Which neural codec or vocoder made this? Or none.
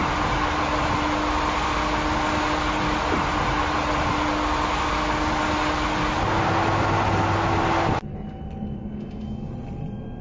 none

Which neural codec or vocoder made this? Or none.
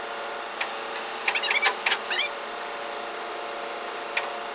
none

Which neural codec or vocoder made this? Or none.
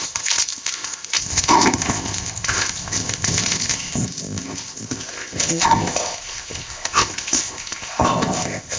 codec, ZipCodec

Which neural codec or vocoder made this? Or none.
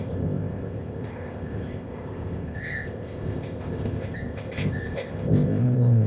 codec, ZipCodec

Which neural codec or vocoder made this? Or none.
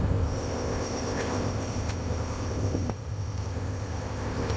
codec, ZipCodec